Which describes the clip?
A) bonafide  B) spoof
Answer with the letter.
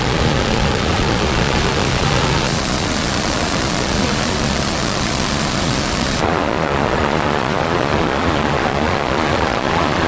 B